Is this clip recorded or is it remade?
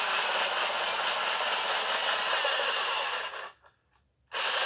recorded